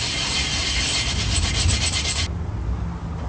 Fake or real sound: real